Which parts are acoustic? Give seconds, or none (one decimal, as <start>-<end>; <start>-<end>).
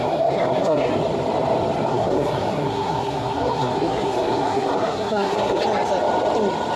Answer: 0.9-1.9; 5.6-6.8